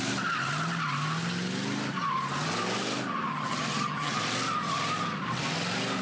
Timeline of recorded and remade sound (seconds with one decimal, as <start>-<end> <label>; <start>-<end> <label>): 0.0-3.3 recorded; 3.3-4.2 remade; 4.2-6.0 recorded